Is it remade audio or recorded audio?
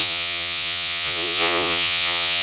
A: remade